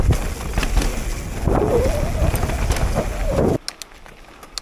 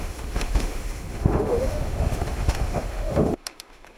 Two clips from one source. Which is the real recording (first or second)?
first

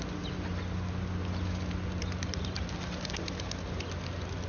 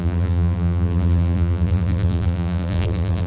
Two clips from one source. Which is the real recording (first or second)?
first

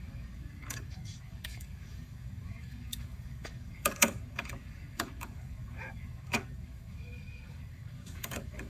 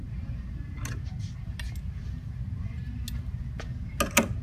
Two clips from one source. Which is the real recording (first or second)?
second